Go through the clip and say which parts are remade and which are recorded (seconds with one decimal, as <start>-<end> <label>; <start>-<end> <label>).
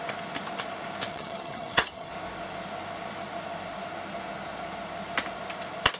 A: 0.0-1.1 recorded; 1.1-2.1 remade; 2.1-6.0 recorded